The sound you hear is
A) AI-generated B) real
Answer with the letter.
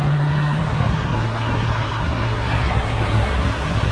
A